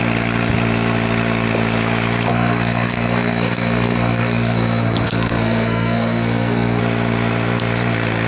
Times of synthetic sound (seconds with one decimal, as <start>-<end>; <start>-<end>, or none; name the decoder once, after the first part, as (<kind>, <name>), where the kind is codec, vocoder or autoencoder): 2.3-6.8 (codec, SNAC)